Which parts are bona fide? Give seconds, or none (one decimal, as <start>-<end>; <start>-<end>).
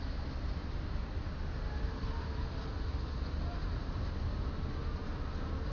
0.0-0.6; 4.0-5.7